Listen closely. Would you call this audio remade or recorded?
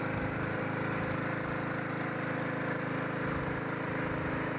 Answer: recorded